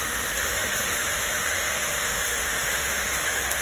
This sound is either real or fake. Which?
fake